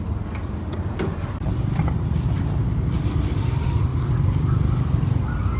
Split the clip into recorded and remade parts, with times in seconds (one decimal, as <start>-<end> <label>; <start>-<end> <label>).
0.0-5.6 recorded